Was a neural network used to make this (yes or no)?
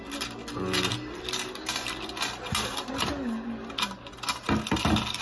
no